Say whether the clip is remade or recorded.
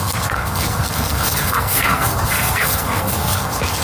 remade